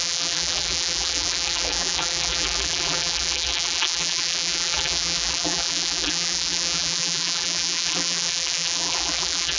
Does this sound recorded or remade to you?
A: remade